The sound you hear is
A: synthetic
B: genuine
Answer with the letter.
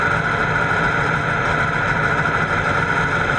B